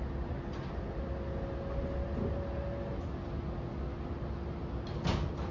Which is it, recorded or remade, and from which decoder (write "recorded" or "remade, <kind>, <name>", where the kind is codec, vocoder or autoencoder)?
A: recorded